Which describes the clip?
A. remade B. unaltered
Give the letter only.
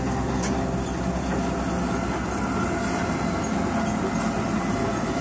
B